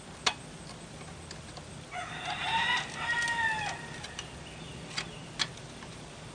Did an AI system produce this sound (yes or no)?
no